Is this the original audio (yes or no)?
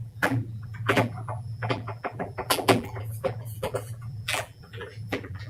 no